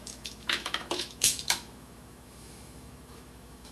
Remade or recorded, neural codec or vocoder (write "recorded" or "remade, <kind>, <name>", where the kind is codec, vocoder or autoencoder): remade, autoencoder, DAC-VAE